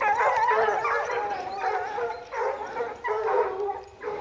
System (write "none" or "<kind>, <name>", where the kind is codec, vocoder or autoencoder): none